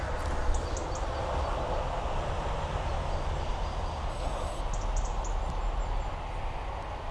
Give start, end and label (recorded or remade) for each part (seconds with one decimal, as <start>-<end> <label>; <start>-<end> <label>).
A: 0.0-4.1 recorded; 4.1-4.6 remade; 4.6-7.1 recorded